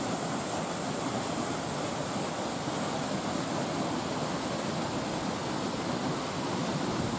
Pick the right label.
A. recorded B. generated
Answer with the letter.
A